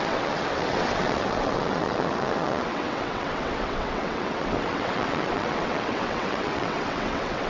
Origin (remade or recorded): remade